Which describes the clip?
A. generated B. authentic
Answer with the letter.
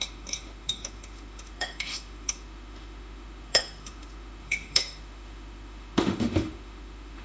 A